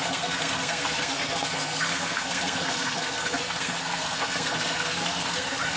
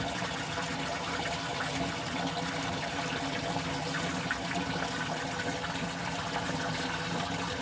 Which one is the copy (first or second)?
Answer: first